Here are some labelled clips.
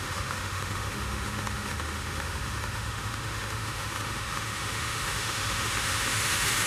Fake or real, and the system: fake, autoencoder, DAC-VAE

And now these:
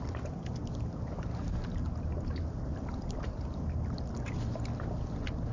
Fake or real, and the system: real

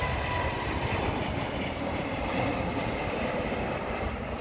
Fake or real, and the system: real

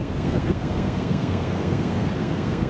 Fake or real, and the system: fake, codec, SNAC